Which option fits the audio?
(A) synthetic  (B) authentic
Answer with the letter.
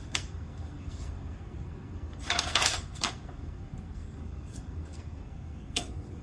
A